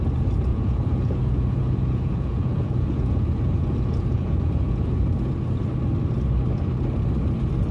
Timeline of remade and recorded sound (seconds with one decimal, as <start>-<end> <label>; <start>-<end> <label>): 0.0-0.5 recorded; 0.5-5.0 remade; 5.0-7.7 recorded